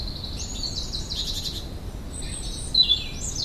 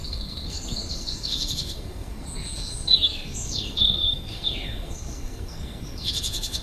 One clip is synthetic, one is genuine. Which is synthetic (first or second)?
second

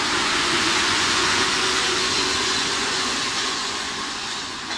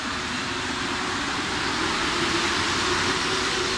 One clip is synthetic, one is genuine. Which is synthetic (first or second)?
first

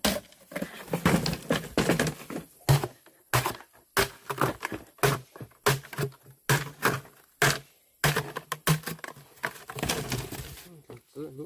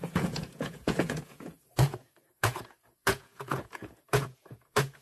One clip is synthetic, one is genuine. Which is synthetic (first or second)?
second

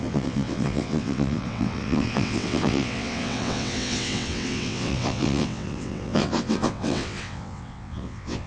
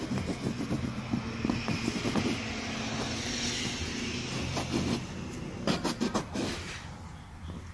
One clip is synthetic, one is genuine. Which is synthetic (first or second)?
first